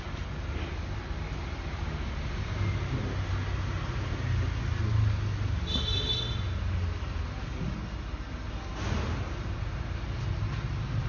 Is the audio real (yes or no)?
yes